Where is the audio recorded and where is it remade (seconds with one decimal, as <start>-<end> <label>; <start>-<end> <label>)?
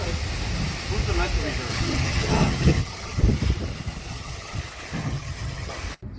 0.0-1.7 recorded; 1.7-3.2 remade; 3.2-4.1 recorded; 4.1-4.6 remade; 4.6-5.0 recorded; 5.0-5.7 remade; 5.7-6.2 recorded